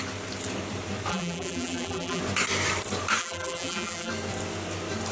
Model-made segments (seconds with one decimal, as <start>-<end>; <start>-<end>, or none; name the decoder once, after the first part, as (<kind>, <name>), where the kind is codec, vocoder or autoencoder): 1.1-2.2 (vocoder, BigVGAN v2); 3.2-4.1